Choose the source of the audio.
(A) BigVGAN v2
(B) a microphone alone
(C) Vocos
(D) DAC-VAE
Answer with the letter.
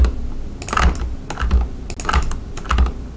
B